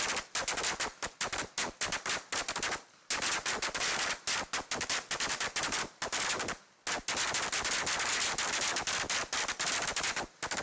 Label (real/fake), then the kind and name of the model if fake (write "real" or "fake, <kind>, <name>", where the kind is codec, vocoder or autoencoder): real